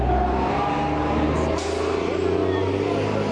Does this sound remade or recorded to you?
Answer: recorded